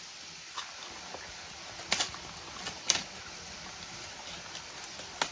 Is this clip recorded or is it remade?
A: recorded